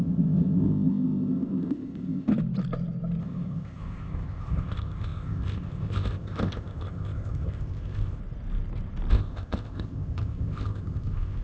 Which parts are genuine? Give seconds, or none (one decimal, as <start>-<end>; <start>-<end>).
2.3-3.2; 8.2-9.1